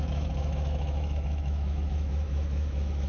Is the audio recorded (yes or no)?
no